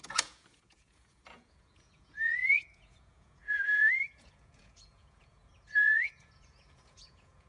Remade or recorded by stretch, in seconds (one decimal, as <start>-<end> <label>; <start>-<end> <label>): 0.0-7.5 remade